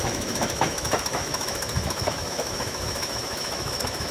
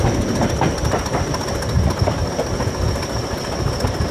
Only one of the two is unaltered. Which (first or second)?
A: second